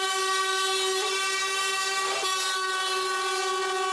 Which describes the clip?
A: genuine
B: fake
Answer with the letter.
A